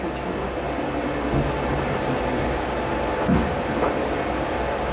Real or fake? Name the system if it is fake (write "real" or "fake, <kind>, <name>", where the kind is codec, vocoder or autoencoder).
real